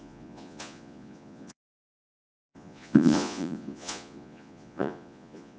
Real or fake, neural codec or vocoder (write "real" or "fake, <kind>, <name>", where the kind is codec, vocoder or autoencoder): fake, vocoder, Vocos